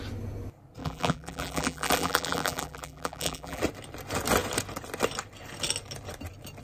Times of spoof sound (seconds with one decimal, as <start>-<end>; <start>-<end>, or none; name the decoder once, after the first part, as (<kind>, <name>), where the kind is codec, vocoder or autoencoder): 0.8-3.6 (vocoder, BigVGAN v2)